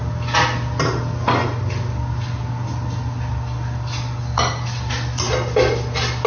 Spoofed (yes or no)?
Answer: no